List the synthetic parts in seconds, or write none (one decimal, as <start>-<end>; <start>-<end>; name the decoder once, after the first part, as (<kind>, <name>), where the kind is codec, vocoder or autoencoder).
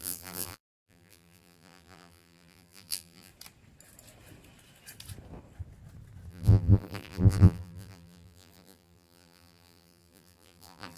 0.0-3.3 (vocoder, BigVGAN v2); 6.3-11.0